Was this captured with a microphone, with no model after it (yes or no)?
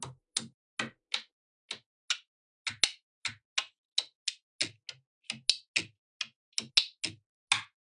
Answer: yes